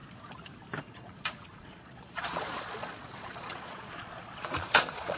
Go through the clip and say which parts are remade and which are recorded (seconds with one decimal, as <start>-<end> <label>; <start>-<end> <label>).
0.0-0.8 recorded; 0.8-5.2 remade